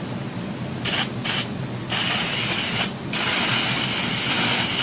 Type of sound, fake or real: real